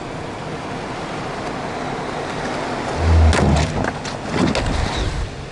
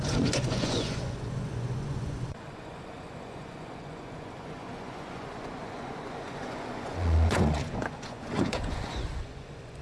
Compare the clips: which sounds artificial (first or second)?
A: second